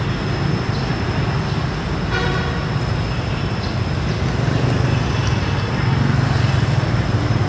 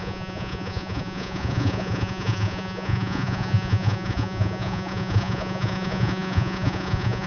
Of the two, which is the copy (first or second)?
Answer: second